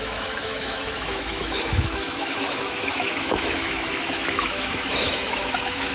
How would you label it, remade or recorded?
remade